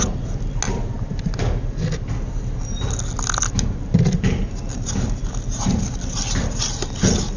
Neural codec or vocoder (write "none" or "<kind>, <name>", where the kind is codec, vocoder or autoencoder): none